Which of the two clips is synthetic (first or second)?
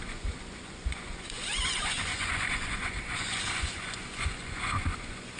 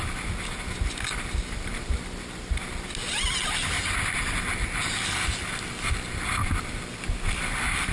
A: first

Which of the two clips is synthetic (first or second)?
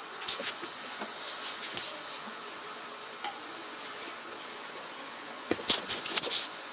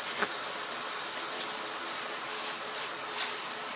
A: first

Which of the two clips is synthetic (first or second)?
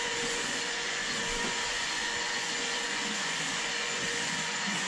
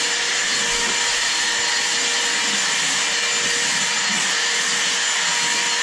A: first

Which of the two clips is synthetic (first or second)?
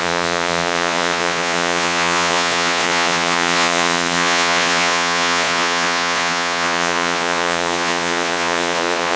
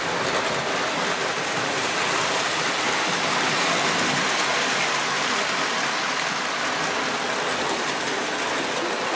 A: first